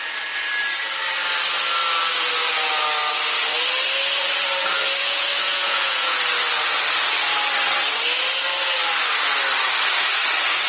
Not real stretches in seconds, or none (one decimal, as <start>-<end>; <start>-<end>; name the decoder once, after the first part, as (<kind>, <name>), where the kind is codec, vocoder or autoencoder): 5.0-6.2 (vocoder, Vocos)